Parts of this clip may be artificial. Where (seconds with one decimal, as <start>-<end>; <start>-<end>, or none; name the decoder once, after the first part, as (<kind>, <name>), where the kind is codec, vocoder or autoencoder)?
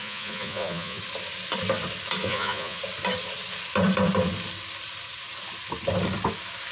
0.0-1.0 (vocoder, Vocos); 2.2-2.8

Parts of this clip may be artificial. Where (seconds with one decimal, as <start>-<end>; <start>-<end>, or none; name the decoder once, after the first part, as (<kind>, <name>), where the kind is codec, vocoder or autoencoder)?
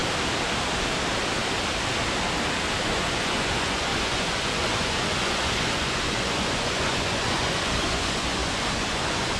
2.8-9.4 (vocoder, Vocos)